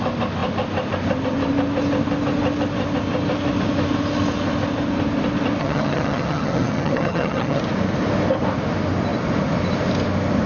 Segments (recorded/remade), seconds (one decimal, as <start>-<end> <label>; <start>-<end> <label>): 0.0-5.6 recorded; 5.6-7.6 remade; 7.6-10.5 recorded